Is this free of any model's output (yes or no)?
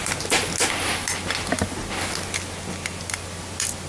yes